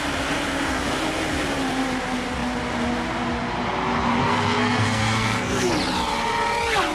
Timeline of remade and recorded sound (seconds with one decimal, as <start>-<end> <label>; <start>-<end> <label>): 0.0-4.2 recorded; 4.2-5.7 remade; 5.7-6.9 recorded